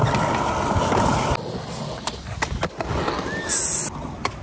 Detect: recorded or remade recorded